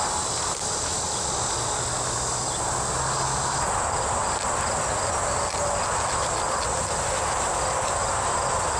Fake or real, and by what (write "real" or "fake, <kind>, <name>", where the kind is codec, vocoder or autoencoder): real